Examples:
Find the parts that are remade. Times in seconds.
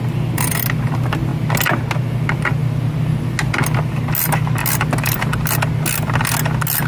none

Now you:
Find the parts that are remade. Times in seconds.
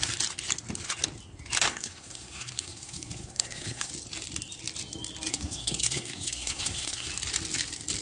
1.7-3.9 (codec, SNAC); 5.3-7.1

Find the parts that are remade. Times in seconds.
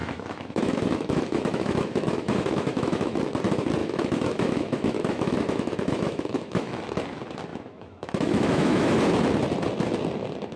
0.0-3.2 (autoencoder, DAC-VAE); 3.8-6.8; 7.5-9.0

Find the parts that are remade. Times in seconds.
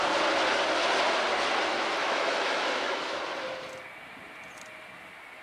2.0-3.2 (autoencoder, DAC-VAE)